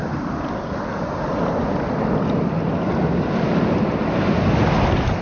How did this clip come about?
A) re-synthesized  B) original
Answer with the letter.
B